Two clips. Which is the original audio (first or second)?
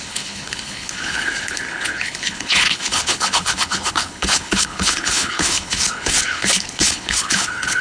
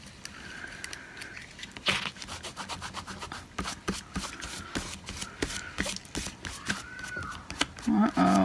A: second